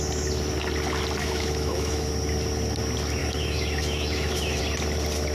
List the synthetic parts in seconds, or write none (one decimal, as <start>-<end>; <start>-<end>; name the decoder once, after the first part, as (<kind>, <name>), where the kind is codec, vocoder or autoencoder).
1.2-2.1 (autoencoder, DAC-VAE); 3.2-4.6

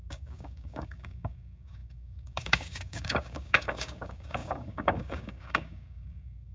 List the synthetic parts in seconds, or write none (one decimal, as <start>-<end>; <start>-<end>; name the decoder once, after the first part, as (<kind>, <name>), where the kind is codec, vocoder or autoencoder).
0.0-6.5 (codec, DAC)

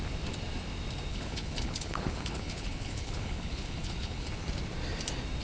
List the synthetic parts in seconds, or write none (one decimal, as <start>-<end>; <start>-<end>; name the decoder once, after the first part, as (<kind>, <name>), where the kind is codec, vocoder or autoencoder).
1.1-4.3 (codec, HILCodec)

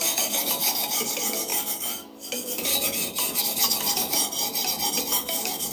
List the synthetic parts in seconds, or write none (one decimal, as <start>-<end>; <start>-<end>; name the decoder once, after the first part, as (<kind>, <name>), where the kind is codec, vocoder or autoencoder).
0.0-2.7 (codec, DAC); 3.4-4.2; 5.1-5.7

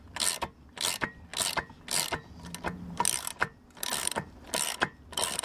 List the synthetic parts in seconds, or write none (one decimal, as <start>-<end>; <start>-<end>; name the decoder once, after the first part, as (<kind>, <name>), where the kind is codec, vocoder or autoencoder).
none

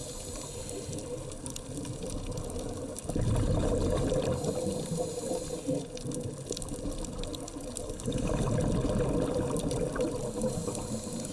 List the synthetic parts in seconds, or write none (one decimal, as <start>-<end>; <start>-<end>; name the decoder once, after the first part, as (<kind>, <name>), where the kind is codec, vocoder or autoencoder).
none

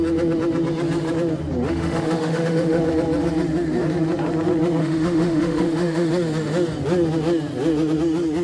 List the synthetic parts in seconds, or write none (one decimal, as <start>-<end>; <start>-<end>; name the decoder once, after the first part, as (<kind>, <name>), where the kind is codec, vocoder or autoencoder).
1.7-2.8 (autoencoder, DAC-VAE); 4.8-6.1